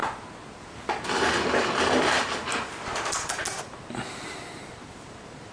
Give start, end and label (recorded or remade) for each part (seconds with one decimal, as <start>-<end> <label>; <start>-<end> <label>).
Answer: 0.0-0.6 recorded; 0.6-3.4 remade; 3.4-4.1 recorded; 4.1-5.5 remade